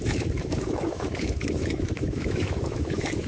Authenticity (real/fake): fake